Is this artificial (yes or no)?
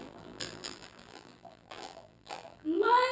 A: yes